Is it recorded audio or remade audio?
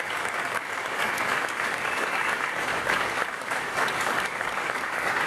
remade